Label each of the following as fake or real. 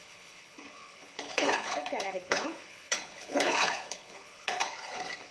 fake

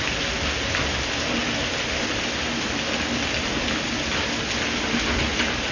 real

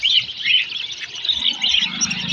real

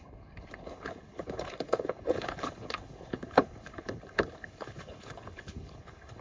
fake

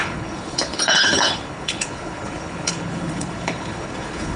fake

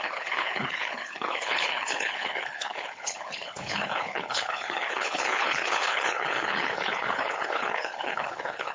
fake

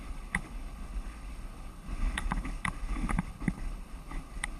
fake